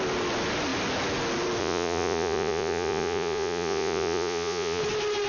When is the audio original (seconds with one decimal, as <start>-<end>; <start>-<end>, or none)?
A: 0.0-1.6; 4.8-5.3